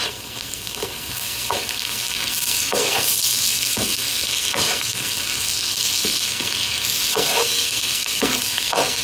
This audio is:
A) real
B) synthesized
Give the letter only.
B